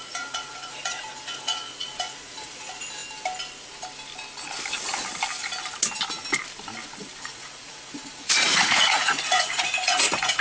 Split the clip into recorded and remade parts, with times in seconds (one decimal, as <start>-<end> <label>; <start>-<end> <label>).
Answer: 0.0-3.0 remade; 3.0-7.2 recorded; 7.2-10.4 remade